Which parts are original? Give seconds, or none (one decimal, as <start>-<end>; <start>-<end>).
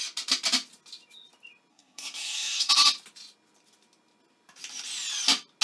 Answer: 0.0-1.7; 2.7-5.6